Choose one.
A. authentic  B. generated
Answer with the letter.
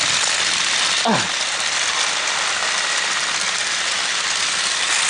A